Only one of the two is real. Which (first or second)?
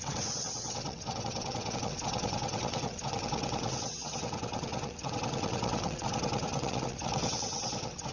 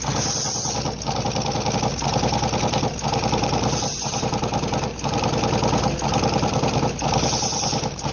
second